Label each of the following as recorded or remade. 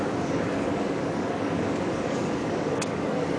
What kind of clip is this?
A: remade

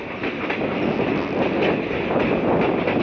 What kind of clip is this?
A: recorded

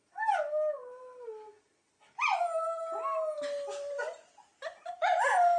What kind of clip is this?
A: recorded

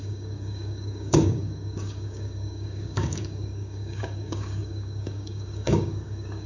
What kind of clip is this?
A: remade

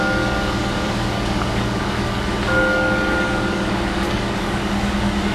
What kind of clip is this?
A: remade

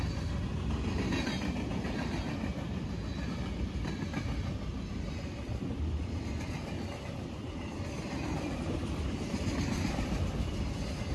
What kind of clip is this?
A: recorded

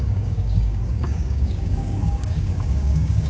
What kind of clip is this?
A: remade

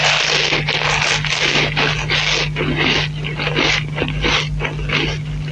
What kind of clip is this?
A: recorded